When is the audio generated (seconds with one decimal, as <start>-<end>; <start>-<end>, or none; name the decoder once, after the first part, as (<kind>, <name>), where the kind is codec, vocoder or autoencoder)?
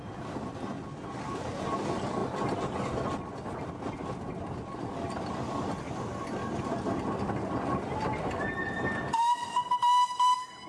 6.4-8.3 (vocoder, BigVGAN v2)